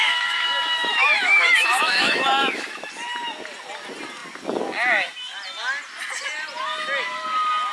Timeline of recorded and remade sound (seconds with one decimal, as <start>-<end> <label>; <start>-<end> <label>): 0.0-2.9 remade; 2.9-7.7 recorded